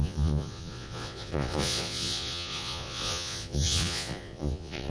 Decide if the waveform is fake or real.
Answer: fake